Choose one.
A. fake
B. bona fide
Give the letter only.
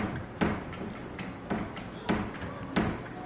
B